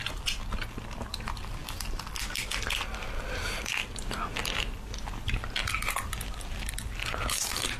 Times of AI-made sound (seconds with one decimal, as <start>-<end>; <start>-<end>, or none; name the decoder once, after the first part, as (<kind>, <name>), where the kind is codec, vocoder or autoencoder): none